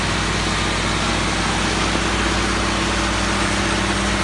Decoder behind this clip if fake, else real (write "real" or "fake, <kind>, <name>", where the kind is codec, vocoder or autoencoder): real